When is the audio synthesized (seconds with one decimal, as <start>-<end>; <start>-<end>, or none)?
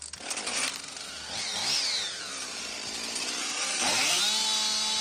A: 3.4-4.2